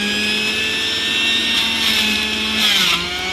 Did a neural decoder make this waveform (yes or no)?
no